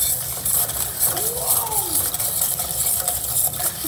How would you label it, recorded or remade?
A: remade